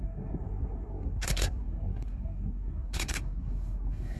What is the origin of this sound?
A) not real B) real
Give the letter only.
A